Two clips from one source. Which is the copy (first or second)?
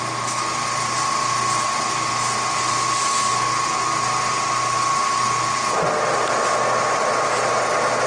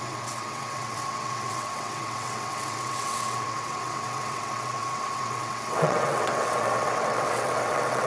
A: second